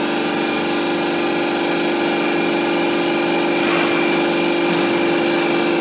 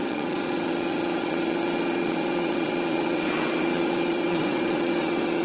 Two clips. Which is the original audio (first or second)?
first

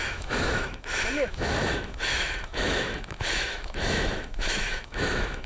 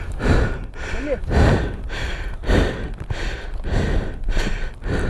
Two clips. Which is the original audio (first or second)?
second